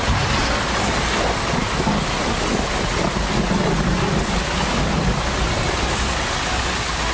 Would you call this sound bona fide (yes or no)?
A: yes